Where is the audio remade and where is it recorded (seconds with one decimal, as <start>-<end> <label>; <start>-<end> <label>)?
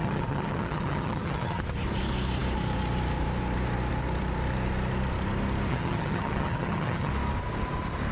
0.0-1.6 remade; 1.6-5.7 recorded; 5.7-7.1 remade; 7.1-8.1 recorded